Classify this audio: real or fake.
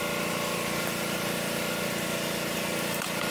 real